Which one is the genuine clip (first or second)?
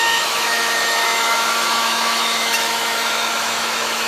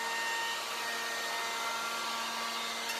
second